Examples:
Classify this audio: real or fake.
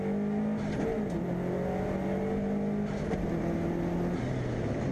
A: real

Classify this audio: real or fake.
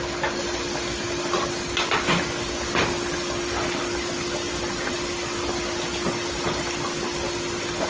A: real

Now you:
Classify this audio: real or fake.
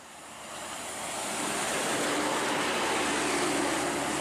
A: real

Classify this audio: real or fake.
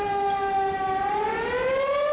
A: real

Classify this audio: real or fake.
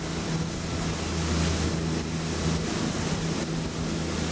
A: real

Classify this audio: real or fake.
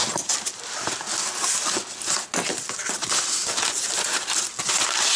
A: real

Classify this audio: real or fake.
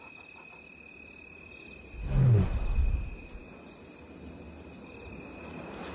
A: real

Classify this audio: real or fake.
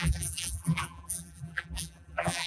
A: fake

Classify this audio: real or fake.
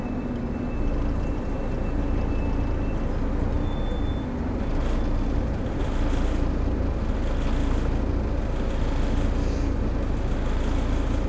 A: real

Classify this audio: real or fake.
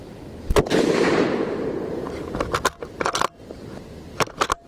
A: real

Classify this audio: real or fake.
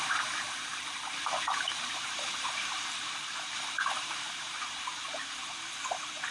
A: fake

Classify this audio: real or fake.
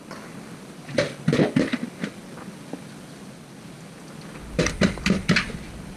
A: real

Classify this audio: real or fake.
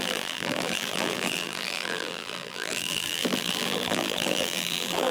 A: fake